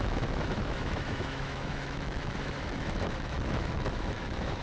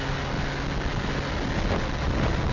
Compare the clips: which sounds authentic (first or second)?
second